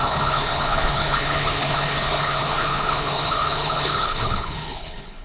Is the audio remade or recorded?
remade